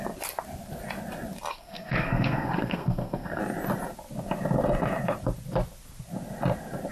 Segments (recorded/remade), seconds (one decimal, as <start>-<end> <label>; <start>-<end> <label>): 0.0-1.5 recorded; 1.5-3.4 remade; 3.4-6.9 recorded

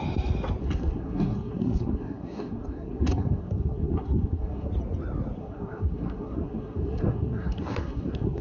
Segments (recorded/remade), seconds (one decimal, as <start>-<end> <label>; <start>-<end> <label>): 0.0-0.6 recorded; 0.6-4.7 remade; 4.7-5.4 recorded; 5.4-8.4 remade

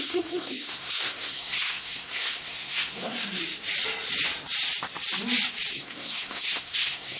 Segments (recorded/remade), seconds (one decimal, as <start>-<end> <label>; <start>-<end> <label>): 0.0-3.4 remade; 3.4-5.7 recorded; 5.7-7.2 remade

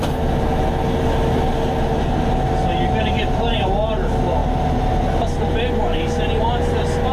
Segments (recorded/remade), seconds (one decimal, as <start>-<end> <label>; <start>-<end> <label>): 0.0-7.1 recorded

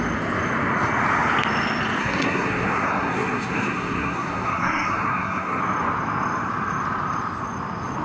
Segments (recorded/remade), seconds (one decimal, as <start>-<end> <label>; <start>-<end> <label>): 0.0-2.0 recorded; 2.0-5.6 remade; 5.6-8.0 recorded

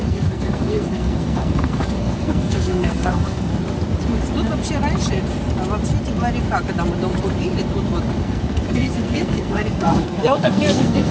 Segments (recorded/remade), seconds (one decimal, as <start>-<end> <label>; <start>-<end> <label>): 0.0-3.5 remade; 3.5-8.2 recorded; 8.2-11.1 remade

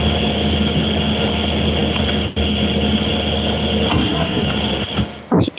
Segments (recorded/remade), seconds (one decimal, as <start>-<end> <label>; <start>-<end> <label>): 0.0-3.9 recorded; 3.9-4.4 remade; 4.4-5.6 recorded

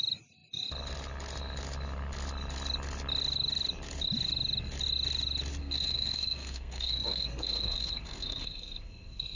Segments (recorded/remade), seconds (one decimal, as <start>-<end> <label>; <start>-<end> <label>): 0.0-5.6 recorded; 5.6-9.4 remade